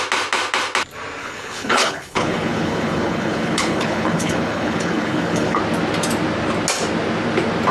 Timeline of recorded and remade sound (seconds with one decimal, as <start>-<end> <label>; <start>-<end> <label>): 0.0-1.2 recorded; 1.2-5.6 remade; 5.6-7.7 recorded